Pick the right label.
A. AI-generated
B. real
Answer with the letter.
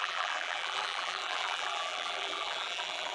A